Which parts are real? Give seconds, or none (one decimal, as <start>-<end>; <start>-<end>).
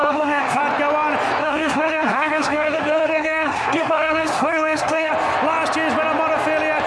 0.6-1.4; 5.1-6.9